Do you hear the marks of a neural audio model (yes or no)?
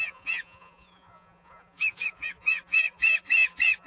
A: yes